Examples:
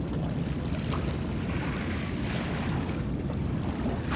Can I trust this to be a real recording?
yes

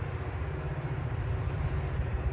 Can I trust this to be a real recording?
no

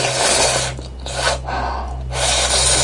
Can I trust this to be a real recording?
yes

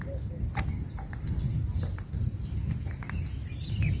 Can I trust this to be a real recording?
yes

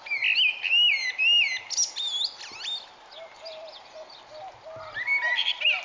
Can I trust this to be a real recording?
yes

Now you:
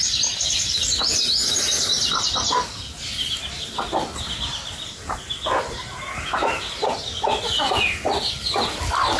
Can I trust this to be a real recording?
yes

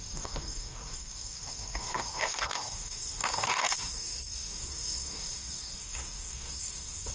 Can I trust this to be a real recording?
no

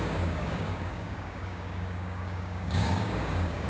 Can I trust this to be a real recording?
no